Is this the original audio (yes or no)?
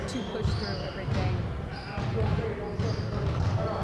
yes